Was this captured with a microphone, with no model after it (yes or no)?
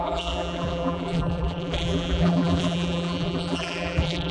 no